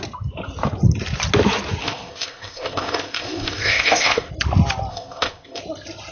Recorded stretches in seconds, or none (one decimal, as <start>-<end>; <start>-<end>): 0.0-1.8; 4.3-4.9; 5.6-6.1